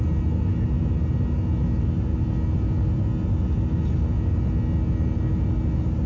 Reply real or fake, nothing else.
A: real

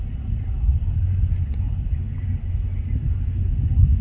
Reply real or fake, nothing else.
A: real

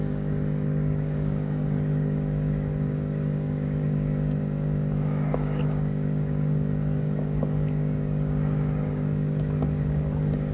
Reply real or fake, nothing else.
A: fake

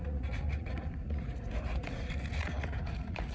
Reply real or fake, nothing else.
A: fake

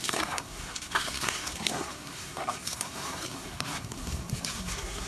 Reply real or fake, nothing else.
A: fake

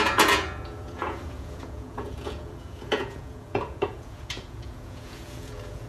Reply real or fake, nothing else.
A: fake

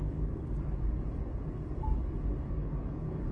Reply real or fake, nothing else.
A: fake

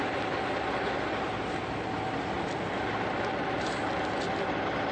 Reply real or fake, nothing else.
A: real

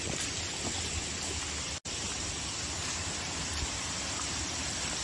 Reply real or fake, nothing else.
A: real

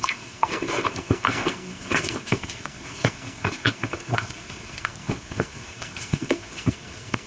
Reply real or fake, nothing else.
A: fake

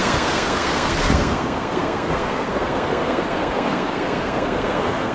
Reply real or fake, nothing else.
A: fake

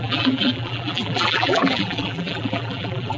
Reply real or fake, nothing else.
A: fake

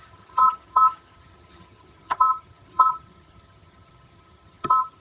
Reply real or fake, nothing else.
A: fake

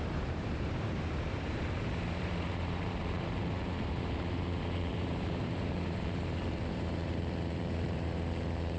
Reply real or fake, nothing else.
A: fake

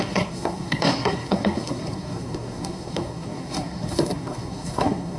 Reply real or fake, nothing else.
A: fake